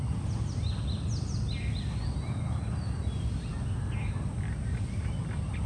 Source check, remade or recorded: recorded